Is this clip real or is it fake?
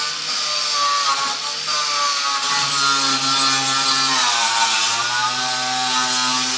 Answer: real